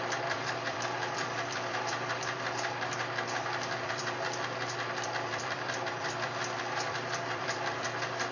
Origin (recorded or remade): remade